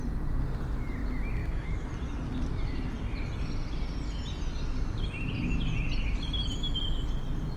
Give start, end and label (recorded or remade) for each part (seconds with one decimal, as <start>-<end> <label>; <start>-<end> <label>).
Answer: 0.0-1.4 recorded; 1.4-1.9 remade; 1.9-7.6 recorded